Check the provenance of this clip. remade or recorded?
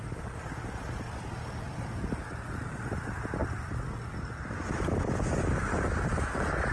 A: recorded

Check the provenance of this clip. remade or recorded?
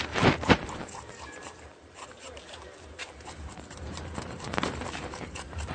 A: remade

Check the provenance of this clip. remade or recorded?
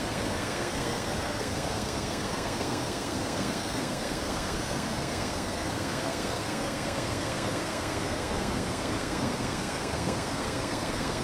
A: remade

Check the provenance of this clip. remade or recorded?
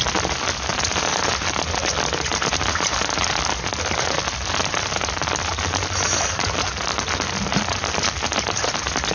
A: recorded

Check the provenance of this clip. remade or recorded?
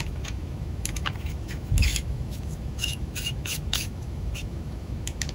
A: remade